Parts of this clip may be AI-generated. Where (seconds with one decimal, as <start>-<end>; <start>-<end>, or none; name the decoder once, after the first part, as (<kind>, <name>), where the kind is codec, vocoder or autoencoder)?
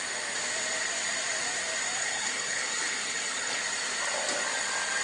2.0-3.6 (codec, HILCodec)